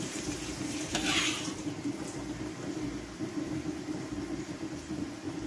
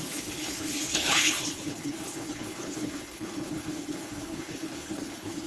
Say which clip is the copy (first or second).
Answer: second